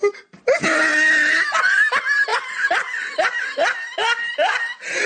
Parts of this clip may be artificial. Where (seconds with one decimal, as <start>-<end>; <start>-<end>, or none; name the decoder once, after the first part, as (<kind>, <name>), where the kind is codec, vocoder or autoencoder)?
2.3-5.1 (vocoder, BigVGAN v2)